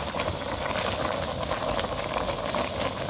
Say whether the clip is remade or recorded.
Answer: recorded